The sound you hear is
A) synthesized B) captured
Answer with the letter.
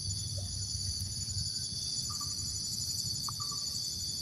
B